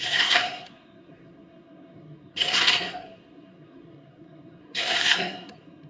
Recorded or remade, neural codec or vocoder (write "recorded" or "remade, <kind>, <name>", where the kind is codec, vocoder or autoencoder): remade, codec, SNAC